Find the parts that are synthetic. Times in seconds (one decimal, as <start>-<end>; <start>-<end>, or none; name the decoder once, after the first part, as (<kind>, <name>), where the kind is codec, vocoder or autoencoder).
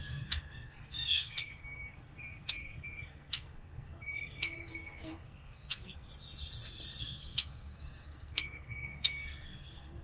0.0-6.1 (codec, SNAC); 7.0-10.0